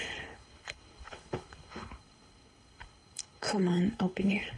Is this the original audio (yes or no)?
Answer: no